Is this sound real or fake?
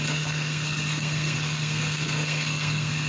fake